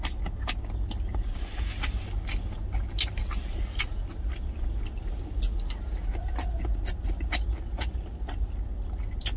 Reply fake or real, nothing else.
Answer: real